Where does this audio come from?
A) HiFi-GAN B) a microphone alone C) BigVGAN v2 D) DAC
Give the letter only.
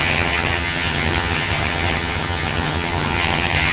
A